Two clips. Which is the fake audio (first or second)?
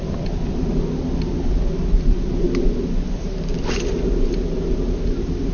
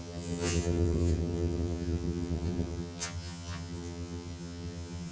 second